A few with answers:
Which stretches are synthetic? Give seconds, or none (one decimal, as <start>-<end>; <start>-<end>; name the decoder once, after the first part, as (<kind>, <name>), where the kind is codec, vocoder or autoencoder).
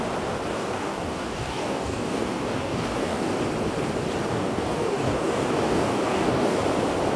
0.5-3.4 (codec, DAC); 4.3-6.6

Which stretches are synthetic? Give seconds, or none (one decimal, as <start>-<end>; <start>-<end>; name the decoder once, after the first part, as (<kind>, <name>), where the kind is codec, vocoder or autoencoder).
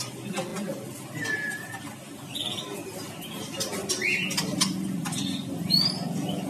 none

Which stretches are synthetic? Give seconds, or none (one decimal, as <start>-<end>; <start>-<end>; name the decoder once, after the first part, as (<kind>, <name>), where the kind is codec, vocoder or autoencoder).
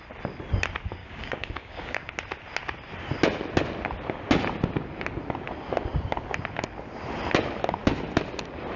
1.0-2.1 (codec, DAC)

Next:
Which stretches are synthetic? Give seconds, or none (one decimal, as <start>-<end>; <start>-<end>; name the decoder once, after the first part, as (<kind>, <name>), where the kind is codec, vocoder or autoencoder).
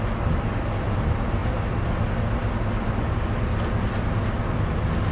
none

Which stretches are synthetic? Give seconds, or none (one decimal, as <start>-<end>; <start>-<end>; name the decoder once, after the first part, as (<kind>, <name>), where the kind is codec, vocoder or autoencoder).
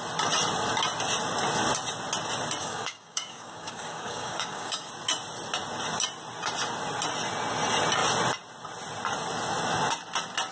2.6-4.9 (codec, DAC)